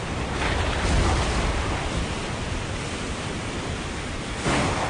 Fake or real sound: real